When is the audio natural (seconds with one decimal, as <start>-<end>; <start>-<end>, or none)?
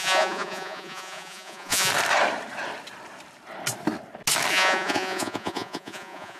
1.9-4.5